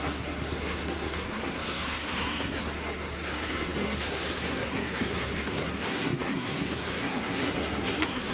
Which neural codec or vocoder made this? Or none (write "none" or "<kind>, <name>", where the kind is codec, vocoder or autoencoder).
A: codec, SNAC